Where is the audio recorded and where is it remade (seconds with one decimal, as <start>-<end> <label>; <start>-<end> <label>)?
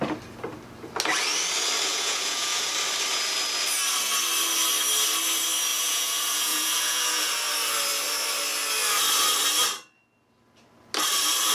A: 0.0-1.9 recorded; 1.9-2.7 remade; 2.7-5.7 recorded; 5.7-7.3 remade; 7.3-11.5 recorded